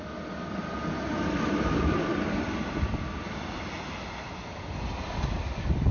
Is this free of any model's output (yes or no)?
yes